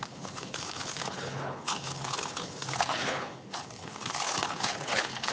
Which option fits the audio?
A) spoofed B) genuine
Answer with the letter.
A